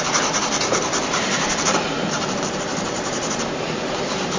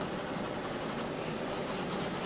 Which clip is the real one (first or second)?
second